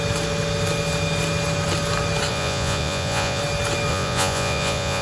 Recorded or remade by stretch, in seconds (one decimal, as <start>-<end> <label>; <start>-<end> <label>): 0.0-2.3 recorded; 2.3-3.4 remade; 3.4-3.9 recorded; 3.9-5.0 remade